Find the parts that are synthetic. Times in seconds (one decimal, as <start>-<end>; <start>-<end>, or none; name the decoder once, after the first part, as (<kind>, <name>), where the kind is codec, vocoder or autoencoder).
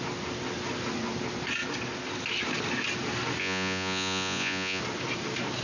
3.4-4.8 (vocoder, Vocos)